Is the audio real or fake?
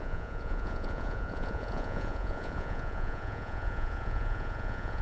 fake